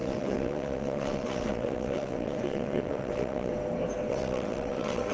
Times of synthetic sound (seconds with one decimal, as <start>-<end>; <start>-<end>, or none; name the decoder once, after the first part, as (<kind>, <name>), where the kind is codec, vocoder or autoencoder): 0.0-3.5 (vocoder, WaveNeXt); 4.1-5.1